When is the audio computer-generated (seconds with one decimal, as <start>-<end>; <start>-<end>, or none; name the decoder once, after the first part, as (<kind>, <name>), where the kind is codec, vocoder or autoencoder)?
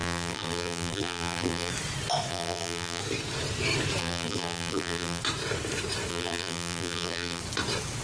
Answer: 0.0-1.7 (vocoder, BigVGAN v2); 2.3-3.0; 4.0-5.2; 6.1-7.4